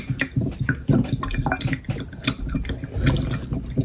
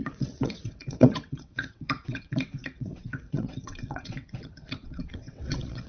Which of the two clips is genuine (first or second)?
first